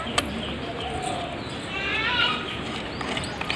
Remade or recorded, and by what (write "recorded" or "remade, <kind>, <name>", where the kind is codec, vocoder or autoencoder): recorded